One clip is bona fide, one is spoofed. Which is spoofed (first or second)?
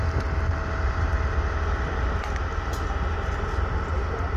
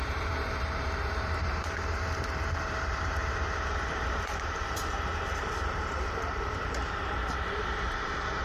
second